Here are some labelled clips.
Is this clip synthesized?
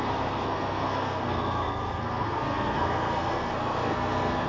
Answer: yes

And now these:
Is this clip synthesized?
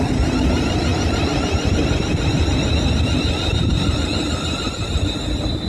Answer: no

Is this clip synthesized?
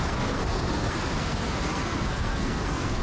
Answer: yes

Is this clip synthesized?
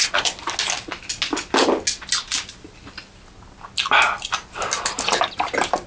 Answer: no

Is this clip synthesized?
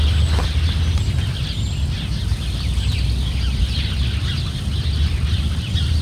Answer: no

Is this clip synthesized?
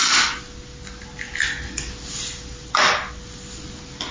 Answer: no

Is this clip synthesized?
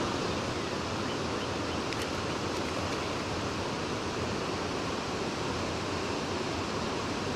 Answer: no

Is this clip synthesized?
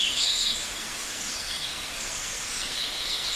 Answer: yes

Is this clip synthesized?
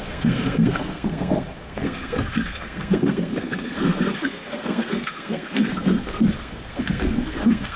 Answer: yes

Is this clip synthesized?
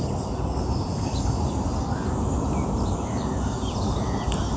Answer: no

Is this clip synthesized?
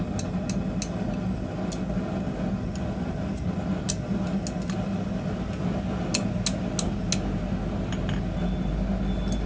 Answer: no